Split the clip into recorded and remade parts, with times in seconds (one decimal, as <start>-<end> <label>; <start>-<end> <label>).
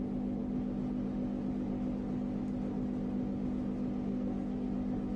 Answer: 0.0-4.1 recorded; 4.1-4.7 remade; 4.7-5.2 recorded